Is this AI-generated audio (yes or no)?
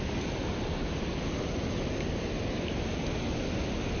no